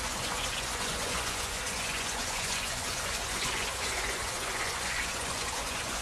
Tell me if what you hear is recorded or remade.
remade